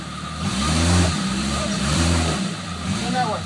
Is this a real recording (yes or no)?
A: no